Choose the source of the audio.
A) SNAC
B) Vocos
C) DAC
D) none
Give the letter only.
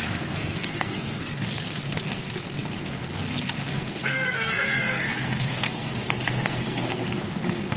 A